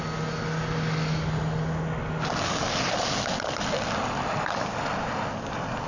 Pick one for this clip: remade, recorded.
recorded